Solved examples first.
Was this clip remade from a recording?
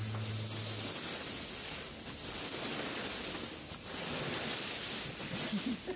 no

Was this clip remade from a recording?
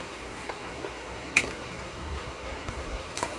yes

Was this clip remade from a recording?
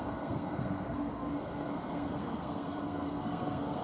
yes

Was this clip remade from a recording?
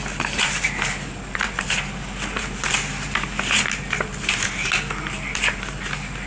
no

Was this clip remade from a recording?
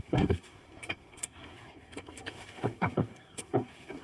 yes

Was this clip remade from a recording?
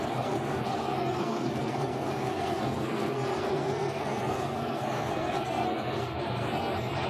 yes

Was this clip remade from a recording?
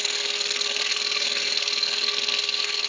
yes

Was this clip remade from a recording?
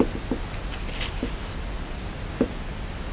no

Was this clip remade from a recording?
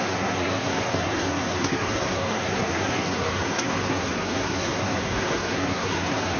yes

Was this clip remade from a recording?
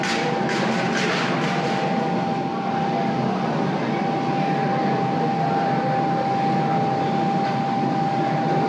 no